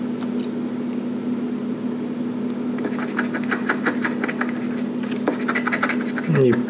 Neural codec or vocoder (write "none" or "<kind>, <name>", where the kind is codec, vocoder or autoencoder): none